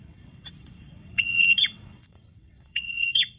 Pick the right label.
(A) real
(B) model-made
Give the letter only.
B